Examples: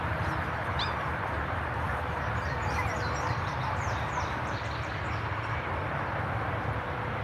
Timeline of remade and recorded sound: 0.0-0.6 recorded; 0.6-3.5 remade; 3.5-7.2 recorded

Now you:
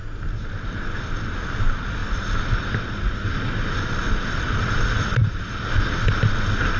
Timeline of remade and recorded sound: 0.0-6.8 recorded

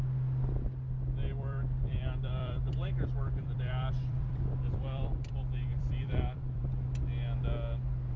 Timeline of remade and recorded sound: 0.0-1.3 recorded; 1.3-5.3 remade; 5.3-5.7 recorded; 5.7-6.6 remade; 6.6-8.2 recorded

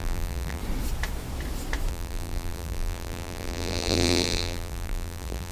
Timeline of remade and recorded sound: 0.0-0.6 remade; 0.6-1.9 recorded; 1.9-5.5 remade

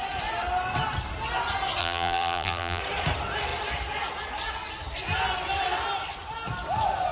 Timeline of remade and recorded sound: 0.0-1.8 recorded; 1.8-2.8 remade; 2.8-7.1 recorded

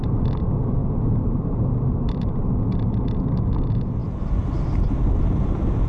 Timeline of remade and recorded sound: 0.0-0.8 recorded; 0.8-2.5 remade; 2.5-5.9 recorded

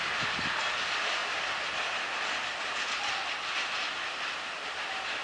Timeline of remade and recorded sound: 0.0-5.2 recorded

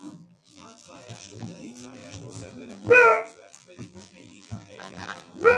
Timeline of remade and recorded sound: 0.0-5.6 remade